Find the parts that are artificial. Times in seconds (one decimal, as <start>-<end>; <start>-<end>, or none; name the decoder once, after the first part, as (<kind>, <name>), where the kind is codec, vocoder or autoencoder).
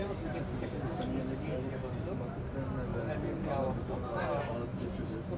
none